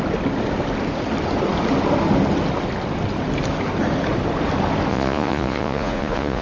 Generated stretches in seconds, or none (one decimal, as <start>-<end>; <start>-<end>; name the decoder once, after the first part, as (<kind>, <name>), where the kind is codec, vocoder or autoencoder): 4.9-6.4 (vocoder, Vocos)